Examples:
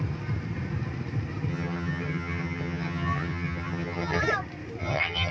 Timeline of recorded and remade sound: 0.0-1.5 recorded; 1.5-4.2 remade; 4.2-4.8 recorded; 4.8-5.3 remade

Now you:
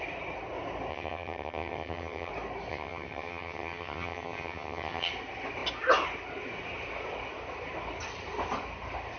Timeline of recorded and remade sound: 0.0-0.9 recorded; 0.9-2.3 remade; 2.3-2.7 recorded; 2.7-5.1 remade; 5.1-9.2 recorded

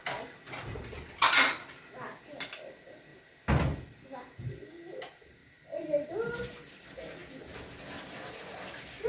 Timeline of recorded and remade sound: 0.0-9.1 recorded

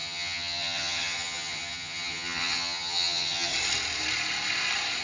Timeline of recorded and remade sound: 0.0-3.5 remade; 3.5-5.0 recorded

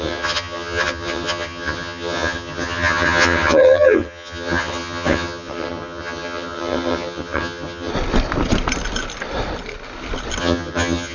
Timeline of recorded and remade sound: 0.0-7.9 remade; 7.9-10.4 recorded; 10.4-11.1 remade

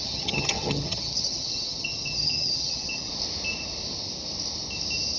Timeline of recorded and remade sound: 0.0-3.1 remade; 3.1-5.2 recorded